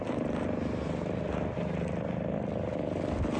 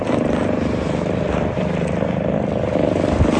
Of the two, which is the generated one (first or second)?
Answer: second